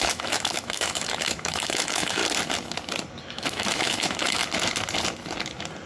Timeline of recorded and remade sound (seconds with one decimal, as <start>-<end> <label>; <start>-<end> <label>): 0.0-2.2 remade; 2.2-3.3 recorded; 3.3-4.4 remade; 4.4-5.9 recorded

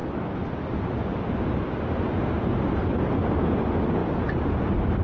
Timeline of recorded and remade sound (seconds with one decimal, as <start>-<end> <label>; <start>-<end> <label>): 0.0-4.0 remade; 4.0-4.5 recorded; 4.5-5.0 remade